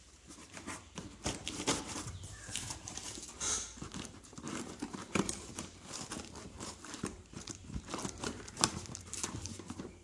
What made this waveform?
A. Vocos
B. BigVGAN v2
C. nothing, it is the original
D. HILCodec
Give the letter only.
B